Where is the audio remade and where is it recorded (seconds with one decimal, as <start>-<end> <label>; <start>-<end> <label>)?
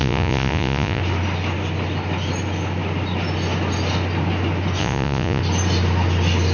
0.0-1.0 remade; 1.0-4.8 recorded; 4.8-5.4 remade; 5.4-6.5 recorded